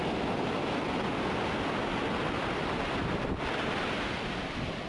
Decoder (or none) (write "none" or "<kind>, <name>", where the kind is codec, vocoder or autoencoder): none